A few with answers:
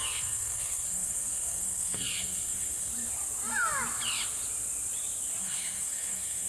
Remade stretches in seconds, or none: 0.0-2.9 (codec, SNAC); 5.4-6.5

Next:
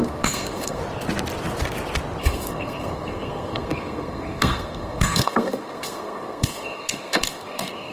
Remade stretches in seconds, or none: 0.0-0.8 (codec, SNAC); 2.2-7.9

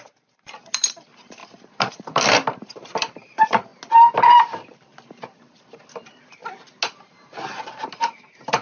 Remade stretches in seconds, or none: 0.0-3.7 (vocoder, BigVGAN v2); 4.4-6.4; 7.1-8.6